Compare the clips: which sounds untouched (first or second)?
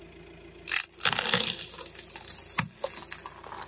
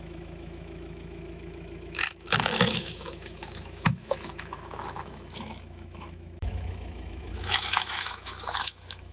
first